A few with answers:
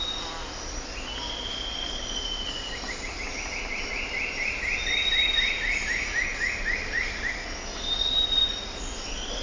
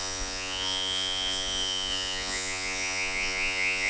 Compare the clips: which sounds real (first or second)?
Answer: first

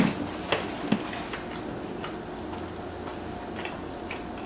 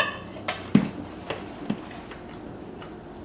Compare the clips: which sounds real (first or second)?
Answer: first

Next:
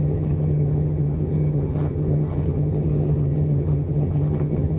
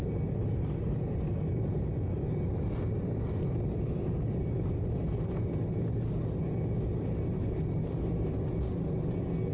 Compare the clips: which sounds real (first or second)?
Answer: second